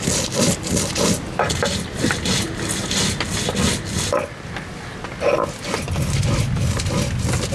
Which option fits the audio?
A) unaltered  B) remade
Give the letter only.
A